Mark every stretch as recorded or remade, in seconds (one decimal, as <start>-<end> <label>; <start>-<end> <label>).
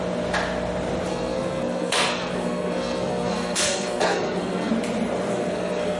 0.0-1.1 recorded; 1.1-4.7 remade; 4.7-5.3 recorded; 5.3-6.0 remade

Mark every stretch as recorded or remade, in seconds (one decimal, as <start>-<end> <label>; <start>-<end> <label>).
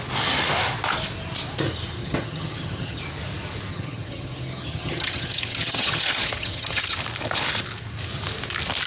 0.0-2.0 recorded; 2.0-3.0 remade; 3.0-3.7 recorded; 3.7-7.0 remade; 7.0-8.9 recorded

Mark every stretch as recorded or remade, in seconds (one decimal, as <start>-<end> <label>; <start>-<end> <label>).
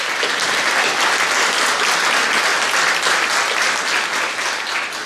0.0-5.1 recorded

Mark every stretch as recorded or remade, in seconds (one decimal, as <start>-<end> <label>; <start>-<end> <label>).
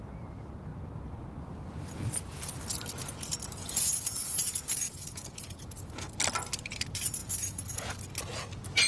0.0-3.6 recorded; 3.6-6.1 remade; 6.1-7.2 recorded; 7.2-8.0 remade; 8.0-8.9 recorded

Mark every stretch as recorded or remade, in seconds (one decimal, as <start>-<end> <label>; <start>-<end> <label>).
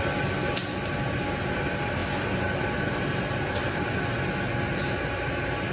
0.0-5.7 recorded